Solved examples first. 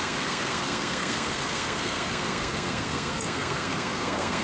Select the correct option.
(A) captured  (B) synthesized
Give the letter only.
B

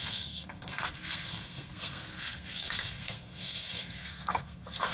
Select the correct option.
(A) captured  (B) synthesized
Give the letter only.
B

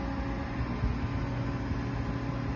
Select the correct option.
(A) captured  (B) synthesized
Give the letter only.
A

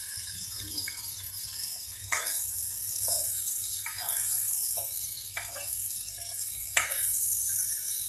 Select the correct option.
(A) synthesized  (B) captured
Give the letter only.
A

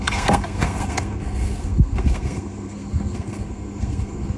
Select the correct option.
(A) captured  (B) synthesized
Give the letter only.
B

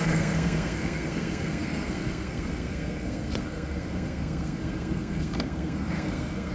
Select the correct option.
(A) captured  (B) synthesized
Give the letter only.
B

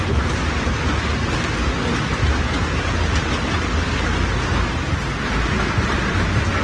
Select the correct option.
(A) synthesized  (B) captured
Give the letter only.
B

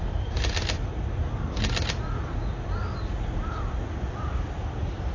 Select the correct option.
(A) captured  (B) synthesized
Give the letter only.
A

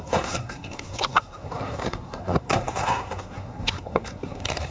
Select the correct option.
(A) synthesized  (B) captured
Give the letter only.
A